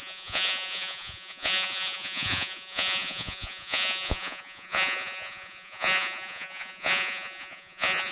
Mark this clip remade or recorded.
remade